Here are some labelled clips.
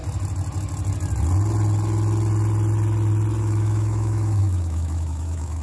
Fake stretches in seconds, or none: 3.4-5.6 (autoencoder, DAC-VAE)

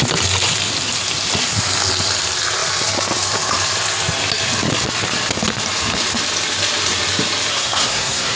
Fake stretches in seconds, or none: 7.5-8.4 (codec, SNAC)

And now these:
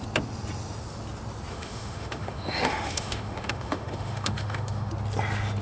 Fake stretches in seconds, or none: 1.5-4.9 (autoencoder, DAC-VAE)

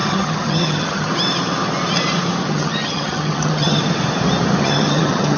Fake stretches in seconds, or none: 0.0-1.1 (vocoder, HiFi-GAN); 2.5-3.8; 4.6-5.4